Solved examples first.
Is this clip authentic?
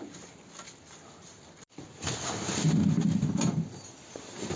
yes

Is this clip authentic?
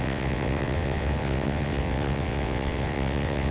no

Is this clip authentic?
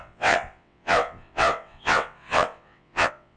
no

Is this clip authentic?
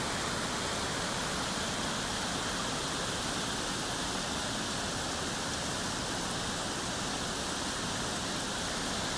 yes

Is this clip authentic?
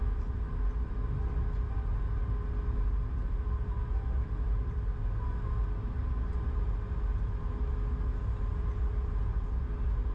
yes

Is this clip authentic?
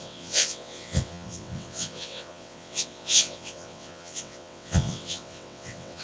no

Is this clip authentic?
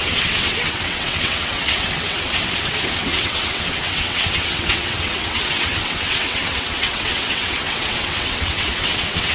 no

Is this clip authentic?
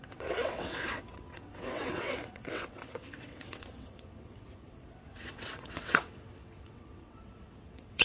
no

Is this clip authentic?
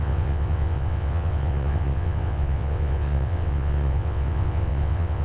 no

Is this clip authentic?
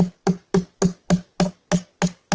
yes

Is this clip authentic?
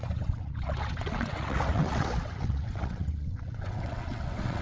no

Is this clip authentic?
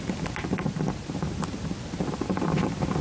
yes